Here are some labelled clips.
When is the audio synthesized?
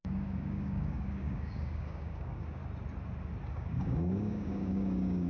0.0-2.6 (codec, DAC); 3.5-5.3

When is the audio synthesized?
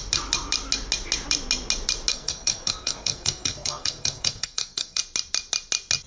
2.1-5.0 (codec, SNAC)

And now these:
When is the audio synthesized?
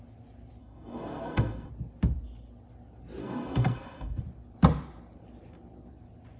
0.6-1.7 (codec, SNAC); 3.2-4.2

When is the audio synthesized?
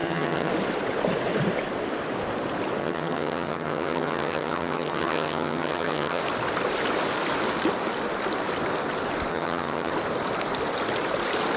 0.0-0.5 (vocoder, HiFi-GAN); 2.8-6.2; 9.3-9.9